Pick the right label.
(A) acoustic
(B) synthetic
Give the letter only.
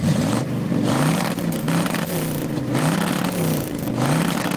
B